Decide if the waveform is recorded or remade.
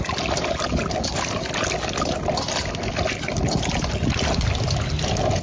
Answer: recorded